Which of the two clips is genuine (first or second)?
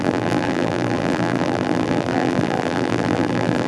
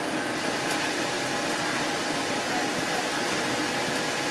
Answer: second